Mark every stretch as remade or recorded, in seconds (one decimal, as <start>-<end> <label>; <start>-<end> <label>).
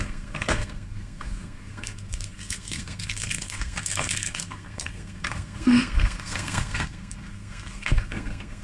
0.0-8.6 remade